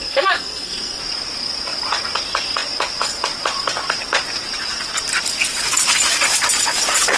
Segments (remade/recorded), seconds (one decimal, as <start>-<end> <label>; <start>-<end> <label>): 0.0-1.0 remade; 1.0-7.2 recorded